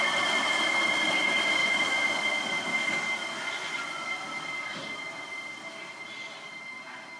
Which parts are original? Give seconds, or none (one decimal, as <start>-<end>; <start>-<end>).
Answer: 0.0-1.6; 2.2-3.4; 4.2-7.2